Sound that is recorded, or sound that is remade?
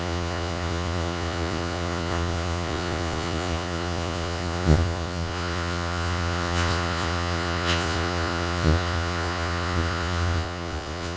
remade